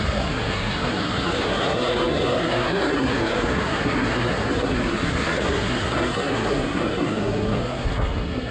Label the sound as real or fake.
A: fake